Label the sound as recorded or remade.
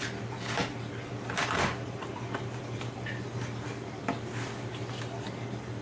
remade